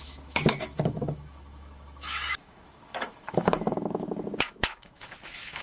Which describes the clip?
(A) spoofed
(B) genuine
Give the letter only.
A